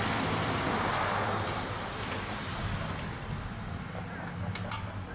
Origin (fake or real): real